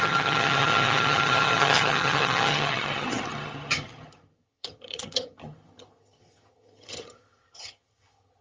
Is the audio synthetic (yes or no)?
yes